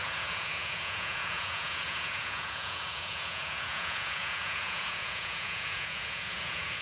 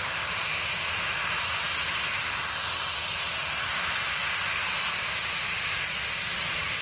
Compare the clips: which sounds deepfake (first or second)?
first